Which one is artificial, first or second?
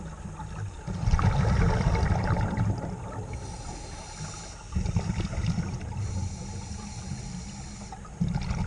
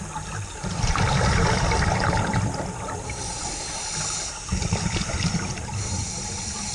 second